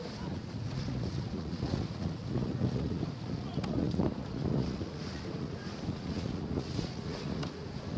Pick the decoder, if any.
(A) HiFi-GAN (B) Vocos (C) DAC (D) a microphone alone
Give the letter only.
B